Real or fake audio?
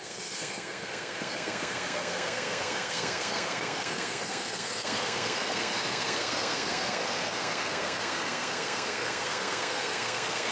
fake